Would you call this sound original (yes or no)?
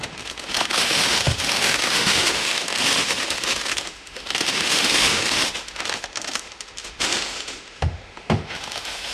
no